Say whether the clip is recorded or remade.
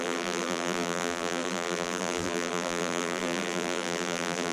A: remade